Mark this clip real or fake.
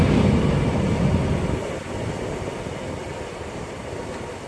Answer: real